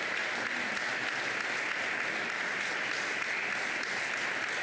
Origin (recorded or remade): recorded